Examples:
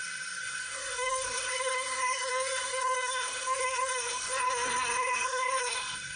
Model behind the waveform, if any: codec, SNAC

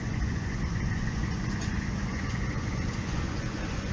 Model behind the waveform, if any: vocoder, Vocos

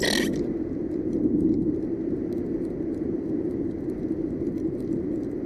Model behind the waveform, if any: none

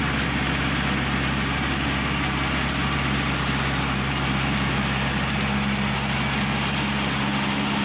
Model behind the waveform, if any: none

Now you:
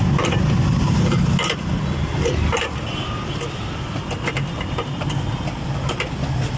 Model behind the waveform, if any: none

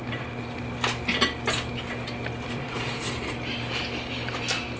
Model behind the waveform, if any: none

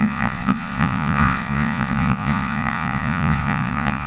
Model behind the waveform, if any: vocoder, Vocos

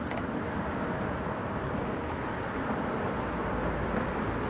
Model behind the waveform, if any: none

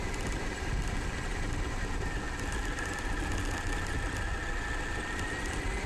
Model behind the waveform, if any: none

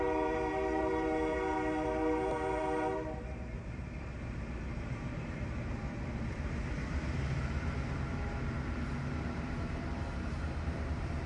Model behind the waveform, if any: vocoder, BigVGAN v2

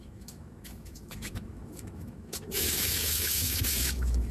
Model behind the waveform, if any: autoencoder, DAC-VAE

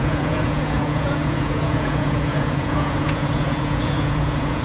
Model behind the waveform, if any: vocoder, Vocos